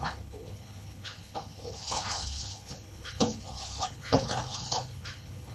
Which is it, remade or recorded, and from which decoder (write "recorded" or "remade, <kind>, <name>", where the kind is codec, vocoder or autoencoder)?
remade, codec, HILCodec